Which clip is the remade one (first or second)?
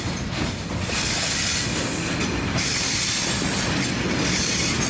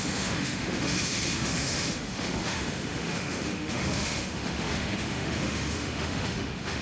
second